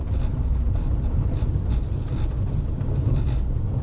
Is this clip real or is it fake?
real